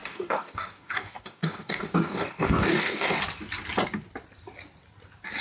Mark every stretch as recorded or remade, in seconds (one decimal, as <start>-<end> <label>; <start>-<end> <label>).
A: 0.0-3.2 remade; 3.2-5.4 recorded